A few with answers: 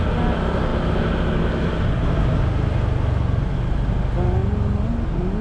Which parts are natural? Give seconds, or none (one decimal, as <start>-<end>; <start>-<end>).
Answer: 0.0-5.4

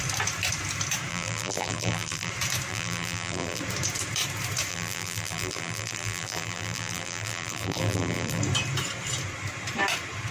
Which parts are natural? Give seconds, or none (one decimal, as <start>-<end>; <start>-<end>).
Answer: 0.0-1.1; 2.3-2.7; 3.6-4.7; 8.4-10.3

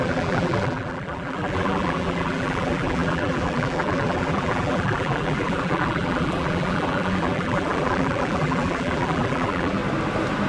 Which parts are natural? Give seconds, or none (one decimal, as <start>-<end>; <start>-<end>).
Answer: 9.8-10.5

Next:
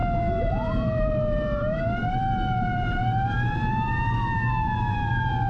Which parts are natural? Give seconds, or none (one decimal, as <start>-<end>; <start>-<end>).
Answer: none

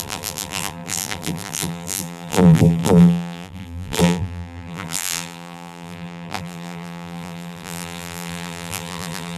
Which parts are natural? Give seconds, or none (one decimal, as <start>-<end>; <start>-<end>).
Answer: none